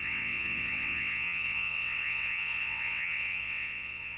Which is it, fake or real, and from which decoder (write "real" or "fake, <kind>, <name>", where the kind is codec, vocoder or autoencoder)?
fake, vocoder, WaveNeXt